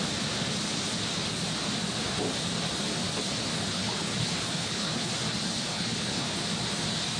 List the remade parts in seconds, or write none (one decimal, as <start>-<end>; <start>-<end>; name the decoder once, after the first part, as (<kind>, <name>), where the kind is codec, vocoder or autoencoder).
4.0-5.1 (codec, HILCodec); 5.7-6.4